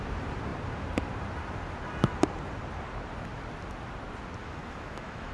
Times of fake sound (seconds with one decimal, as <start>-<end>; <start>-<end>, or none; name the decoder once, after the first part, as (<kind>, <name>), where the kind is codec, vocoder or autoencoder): 4.4-5.3 (autoencoder, DAC-VAE)